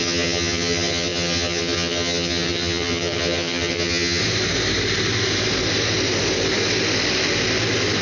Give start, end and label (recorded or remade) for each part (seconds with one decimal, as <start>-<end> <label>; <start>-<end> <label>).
0.0-4.2 remade; 4.2-8.0 recorded